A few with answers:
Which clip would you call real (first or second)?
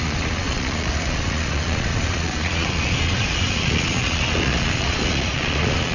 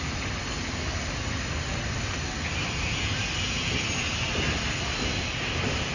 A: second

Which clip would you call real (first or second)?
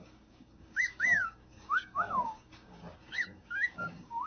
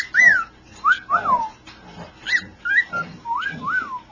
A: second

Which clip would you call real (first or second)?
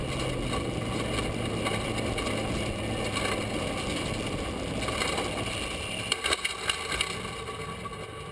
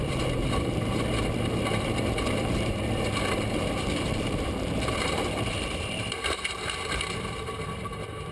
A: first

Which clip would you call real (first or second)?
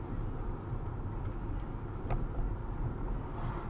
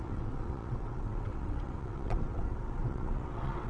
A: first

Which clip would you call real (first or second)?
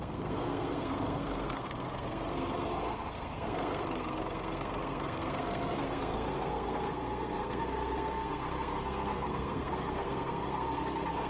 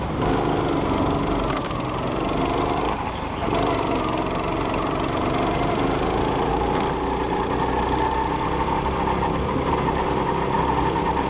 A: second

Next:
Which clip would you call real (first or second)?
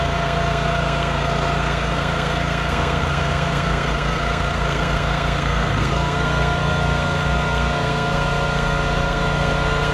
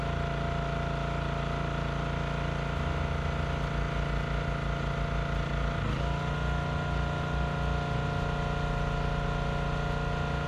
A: second